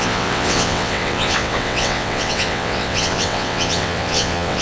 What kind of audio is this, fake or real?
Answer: fake